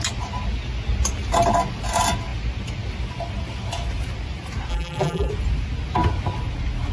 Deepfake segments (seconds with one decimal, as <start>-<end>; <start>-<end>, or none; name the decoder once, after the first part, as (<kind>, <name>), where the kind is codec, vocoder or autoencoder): 4.7-5.3 (vocoder, BigVGAN v2)